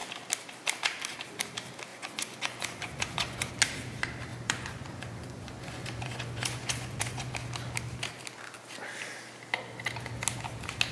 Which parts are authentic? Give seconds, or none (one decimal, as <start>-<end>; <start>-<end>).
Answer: 0.0-1.9; 3.5-4.3; 7.3-10.9